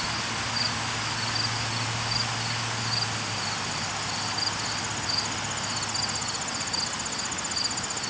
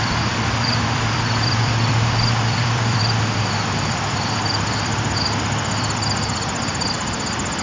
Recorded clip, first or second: first